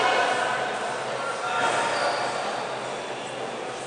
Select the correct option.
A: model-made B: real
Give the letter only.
B